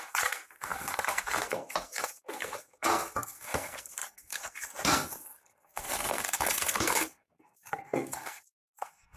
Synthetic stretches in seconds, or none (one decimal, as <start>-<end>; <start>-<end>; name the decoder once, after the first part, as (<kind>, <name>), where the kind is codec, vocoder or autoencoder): 0.0-9.2 (codec, SNAC)